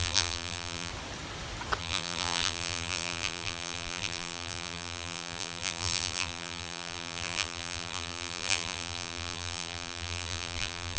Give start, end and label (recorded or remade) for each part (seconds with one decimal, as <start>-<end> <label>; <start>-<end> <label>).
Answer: 0.0-0.9 remade; 0.9-1.8 recorded; 1.8-11.0 remade